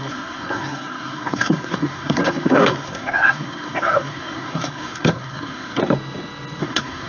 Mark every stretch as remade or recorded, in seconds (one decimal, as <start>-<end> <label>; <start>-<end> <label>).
0.0-5.8 remade; 5.8-6.6 recorded; 6.6-7.1 remade